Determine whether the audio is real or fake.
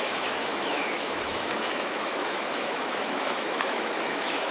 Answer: fake